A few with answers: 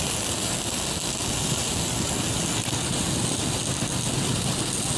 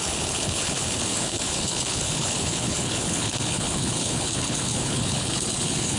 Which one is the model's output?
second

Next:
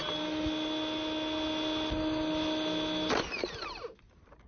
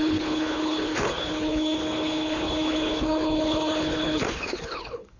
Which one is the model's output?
second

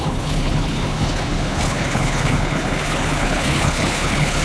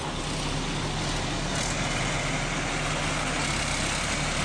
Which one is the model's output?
first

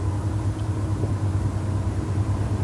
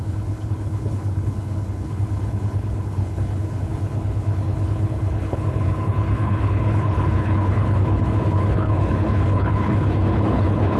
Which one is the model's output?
second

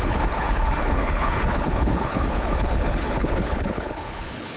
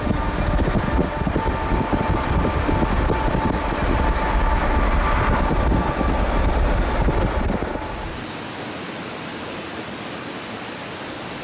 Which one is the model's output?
first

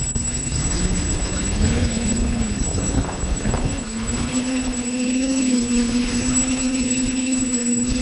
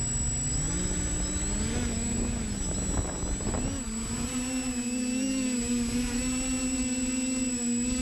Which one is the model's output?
first